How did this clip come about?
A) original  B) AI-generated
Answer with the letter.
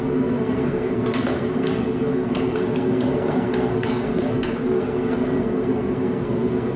B